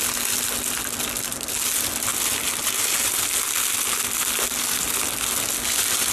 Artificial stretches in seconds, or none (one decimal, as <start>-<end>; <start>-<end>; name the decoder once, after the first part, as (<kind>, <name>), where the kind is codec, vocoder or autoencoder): none